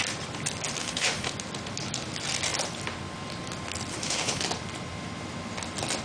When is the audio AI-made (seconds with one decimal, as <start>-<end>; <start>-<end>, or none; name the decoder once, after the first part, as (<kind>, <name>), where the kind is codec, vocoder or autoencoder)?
0.8-1.3 (autoencoder, DAC-VAE); 3.9-4.4